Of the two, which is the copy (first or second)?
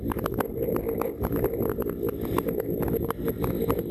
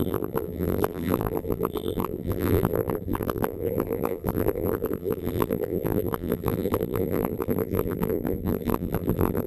second